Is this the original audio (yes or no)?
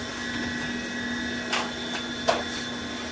yes